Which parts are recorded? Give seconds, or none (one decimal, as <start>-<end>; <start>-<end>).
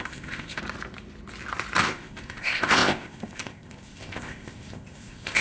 0.6-1.8